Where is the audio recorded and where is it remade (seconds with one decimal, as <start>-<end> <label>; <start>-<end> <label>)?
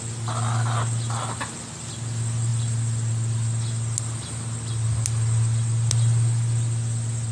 0.0-7.3 recorded